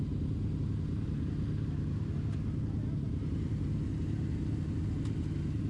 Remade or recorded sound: recorded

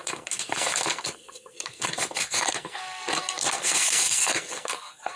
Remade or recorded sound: remade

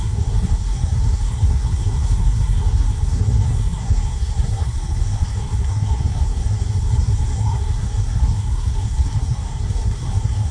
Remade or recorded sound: remade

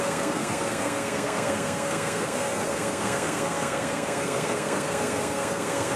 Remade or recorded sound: remade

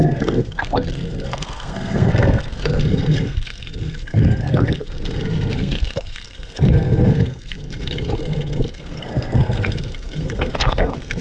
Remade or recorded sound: remade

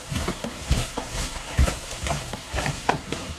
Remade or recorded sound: remade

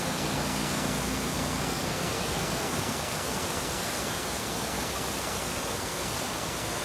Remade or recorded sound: remade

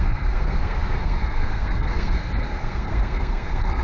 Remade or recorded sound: remade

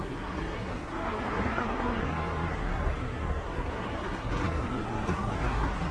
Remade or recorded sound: remade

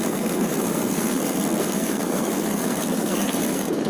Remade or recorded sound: remade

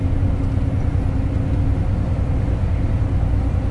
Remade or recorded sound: recorded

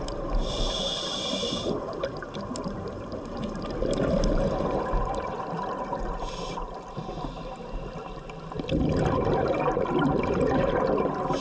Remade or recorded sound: recorded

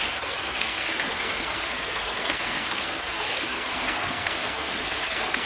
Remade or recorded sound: remade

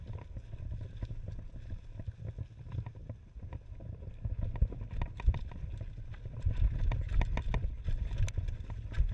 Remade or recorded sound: recorded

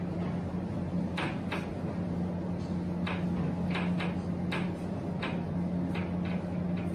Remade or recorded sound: recorded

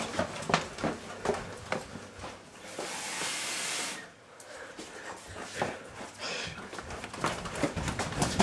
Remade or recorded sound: recorded